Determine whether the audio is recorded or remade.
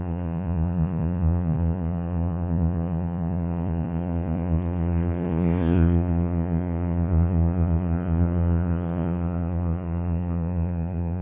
remade